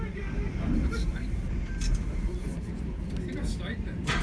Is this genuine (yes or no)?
yes